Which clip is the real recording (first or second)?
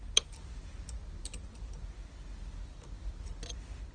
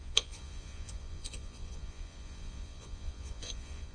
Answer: first